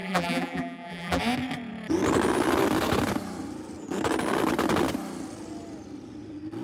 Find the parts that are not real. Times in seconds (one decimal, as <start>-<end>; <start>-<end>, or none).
0.0-1.2